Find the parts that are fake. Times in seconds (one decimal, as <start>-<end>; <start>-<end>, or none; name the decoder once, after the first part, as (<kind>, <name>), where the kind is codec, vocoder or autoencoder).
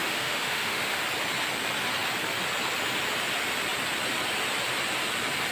0.0-1.0 (autoencoder, DAC-VAE)